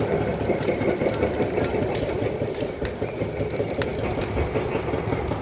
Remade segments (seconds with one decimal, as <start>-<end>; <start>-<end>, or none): none